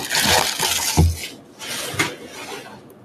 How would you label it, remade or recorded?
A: recorded